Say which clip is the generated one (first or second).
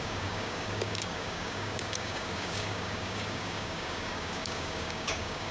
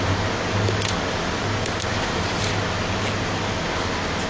first